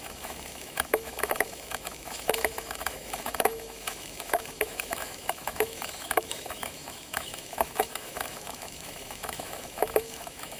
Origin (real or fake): fake